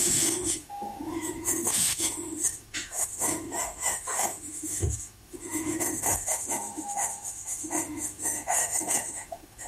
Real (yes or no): no